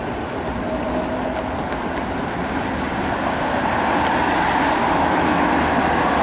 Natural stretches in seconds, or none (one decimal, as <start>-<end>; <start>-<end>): 0.0-4.8; 5.5-6.2